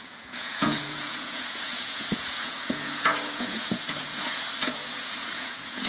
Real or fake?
fake